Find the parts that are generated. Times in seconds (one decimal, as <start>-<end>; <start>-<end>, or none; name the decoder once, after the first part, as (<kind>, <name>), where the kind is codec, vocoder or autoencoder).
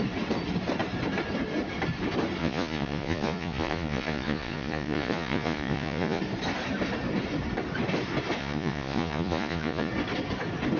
2.4-6.2 (vocoder, Vocos); 8.4-9.9